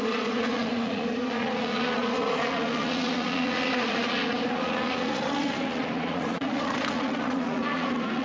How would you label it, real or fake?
fake